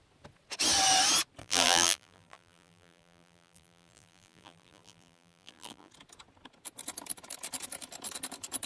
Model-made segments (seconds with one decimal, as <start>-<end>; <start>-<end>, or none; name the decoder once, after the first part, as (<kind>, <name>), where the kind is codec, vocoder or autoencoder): 1.4-5.9 (vocoder, BigVGAN v2)